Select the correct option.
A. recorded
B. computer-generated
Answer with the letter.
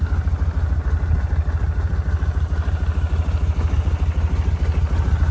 A